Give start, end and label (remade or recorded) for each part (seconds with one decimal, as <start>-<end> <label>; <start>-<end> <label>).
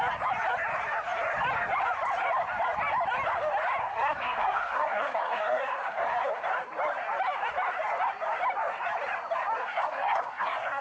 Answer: 0.0-3.8 recorded; 3.8-6.4 remade; 6.4-9.6 recorded; 9.6-10.8 remade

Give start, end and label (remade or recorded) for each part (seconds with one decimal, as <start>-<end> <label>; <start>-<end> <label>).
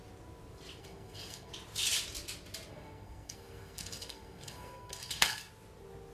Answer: 0.0-0.8 recorded; 0.8-1.5 remade; 1.5-2.7 recorded; 2.7-5.5 remade; 5.5-6.1 recorded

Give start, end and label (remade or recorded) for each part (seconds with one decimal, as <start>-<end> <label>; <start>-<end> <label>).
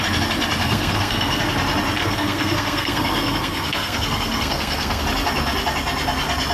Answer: 0.0-0.6 recorded; 0.6-1.5 remade; 1.5-2.0 recorded; 2.0-5.0 remade; 5.0-6.5 recorded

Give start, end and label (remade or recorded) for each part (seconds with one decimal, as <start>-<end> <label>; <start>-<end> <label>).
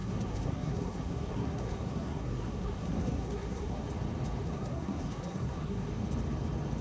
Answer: 0.0-3.9 remade; 3.9-4.4 recorded; 4.4-5.9 remade; 5.9-6.8 recorded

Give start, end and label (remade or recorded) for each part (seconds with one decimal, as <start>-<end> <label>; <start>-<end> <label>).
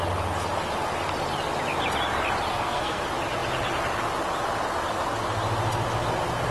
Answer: 0.0-2.5 recorded; 2.5-3.0 remade; 3.0-6.5 recorded